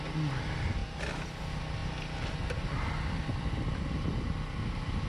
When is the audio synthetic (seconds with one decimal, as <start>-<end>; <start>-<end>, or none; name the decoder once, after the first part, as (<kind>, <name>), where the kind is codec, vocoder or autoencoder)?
0.8-1.4 (vocoder, BigVGAN v2)